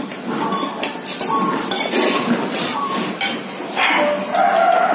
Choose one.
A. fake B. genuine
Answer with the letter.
B